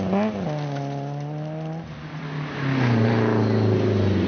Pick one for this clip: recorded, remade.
recorded